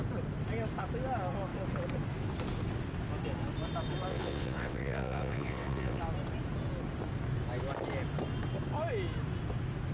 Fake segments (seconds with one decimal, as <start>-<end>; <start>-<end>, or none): 4.1-6.0